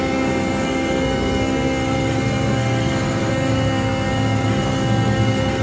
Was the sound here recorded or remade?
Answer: remade